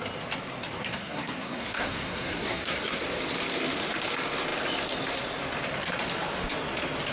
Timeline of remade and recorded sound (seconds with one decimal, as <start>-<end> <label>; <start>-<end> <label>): 0.0-0.8 recorded; 0.8-3.0 remade; 3.0-7.1 recorded